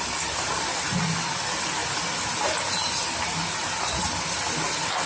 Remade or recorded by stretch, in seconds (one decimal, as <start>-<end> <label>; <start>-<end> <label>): 0.0-5.1 recorded